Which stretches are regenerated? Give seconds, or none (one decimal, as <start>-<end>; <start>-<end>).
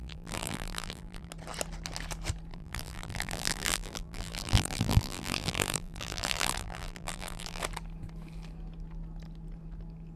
0.0-1.3; 2.5-7.6